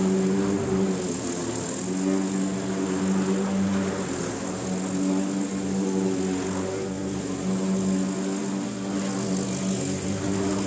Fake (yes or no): no